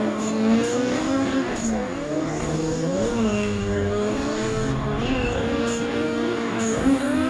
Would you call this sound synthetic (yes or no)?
yes